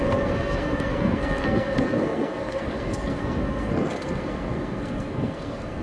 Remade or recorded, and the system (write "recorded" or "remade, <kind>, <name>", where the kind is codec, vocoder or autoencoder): remade, codec, SNAC